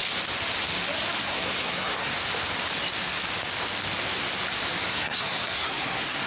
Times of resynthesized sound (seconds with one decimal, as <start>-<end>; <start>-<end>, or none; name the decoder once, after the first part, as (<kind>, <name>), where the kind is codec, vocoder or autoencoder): 1.2-2.1 (codec, SNAC); 4.9-6.3

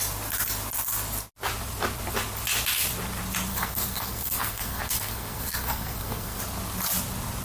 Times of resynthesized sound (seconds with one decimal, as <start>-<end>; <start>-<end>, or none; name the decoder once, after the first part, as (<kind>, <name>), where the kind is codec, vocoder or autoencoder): 3.5-6.4 (codec, SNAC)

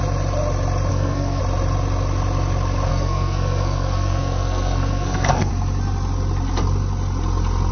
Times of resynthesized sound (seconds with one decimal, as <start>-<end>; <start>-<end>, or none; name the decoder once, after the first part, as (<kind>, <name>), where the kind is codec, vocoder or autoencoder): 0.9-1.4 (codec, SNAC); 2.9-5.5

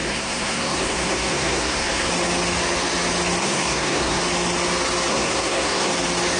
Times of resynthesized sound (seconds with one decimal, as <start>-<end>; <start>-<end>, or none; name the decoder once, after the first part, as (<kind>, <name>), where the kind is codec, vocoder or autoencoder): 0.0-2.1 (codec, SNAC); 3.4-4.2; 5.1-5.9

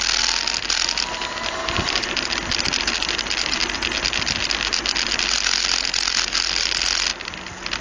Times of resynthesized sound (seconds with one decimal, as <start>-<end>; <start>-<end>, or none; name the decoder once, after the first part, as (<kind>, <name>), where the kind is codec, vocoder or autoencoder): none

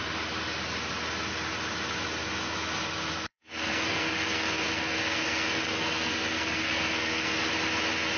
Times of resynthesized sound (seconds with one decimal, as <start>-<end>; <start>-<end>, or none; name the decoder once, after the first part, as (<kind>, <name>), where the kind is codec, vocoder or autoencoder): 3.3-7.5 (codec, SNAC)